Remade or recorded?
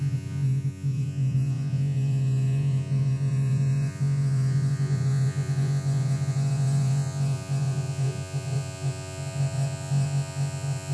remade